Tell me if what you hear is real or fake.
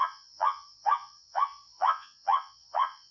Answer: fake